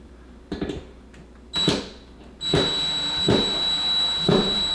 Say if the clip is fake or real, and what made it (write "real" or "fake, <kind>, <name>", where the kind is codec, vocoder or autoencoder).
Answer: real